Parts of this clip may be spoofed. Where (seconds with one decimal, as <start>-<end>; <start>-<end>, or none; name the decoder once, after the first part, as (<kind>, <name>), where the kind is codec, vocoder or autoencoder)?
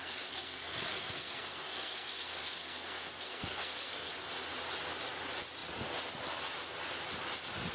0.0-4.1 (codec, SNAC)